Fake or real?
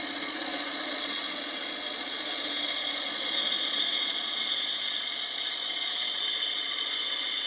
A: fake